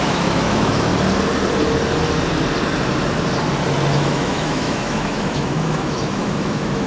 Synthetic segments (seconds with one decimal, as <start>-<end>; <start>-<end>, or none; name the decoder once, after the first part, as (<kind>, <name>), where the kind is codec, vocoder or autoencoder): 0.0-0.9 (autoencoder, DAC-VAE); 4.0-6.9